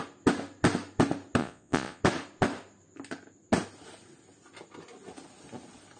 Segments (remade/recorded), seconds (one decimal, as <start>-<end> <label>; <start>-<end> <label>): 0.0-1.4 recorded; 1.4-2.0 remade; 2.0-6.0 recorded